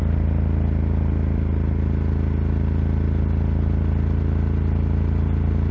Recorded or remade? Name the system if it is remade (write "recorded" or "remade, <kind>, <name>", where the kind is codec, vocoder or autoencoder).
recorded